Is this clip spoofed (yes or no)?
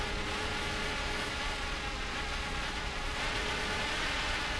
yes